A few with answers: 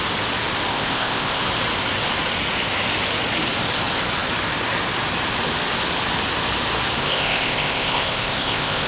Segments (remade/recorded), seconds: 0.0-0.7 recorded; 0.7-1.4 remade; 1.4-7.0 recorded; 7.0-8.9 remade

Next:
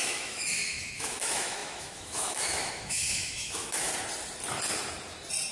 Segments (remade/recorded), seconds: 0.0-3.9 remade; 3.9-5.5 recorded

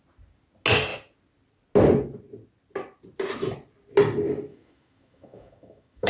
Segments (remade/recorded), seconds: 0.0-4.5 recorded; 4.5-6.1 remade

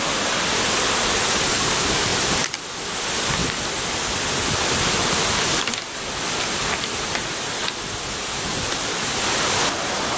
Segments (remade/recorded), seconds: 0.0-10.2 recorded

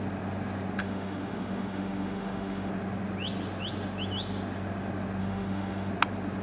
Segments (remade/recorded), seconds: 0.0-0.8 recorded; 0.8-2.7 remade; 2.7-5.2 recorded; 5.2-5.9 remade; 5.9-6.4 recorded

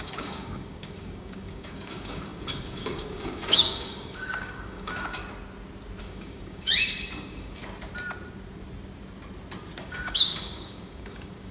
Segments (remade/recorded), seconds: 0.0-5.2 remade; 5.2-6.0 recorded; 6.0-7.6 remade; 7.6-9.8 recorded; 9.8-11.5 remade

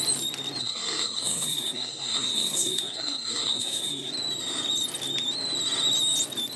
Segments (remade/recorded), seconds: 0.0-0.6 recorded; 0.6-4.1 remade; 4.1-6.6 recorded

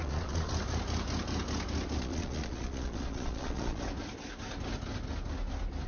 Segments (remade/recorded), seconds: 0.0-0.5 remade; 0.5-2.0 recorded; 2.0-3.8 remade; 3.8-5.9 recorded